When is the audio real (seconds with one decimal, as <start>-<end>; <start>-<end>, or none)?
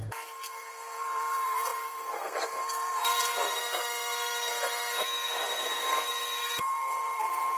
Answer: none